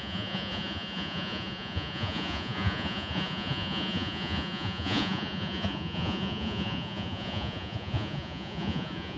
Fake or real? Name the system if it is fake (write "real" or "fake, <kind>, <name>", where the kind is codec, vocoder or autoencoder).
fake, vocoder, Vocos